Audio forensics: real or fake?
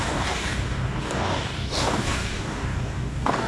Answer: fake